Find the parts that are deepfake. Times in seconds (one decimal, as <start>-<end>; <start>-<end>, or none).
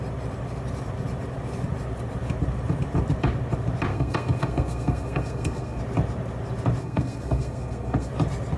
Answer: 3.9-5.8; 6.8-8.1